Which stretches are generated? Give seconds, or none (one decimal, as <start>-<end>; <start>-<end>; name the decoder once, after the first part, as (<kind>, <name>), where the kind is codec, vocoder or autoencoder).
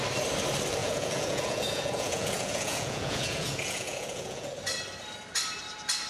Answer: 0.8-4.5 (vocoder, Vocos)